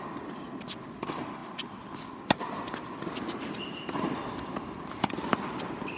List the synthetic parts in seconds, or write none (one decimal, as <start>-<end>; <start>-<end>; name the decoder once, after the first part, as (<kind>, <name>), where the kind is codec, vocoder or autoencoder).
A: none